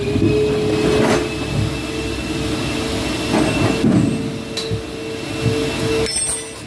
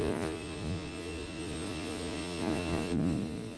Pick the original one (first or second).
first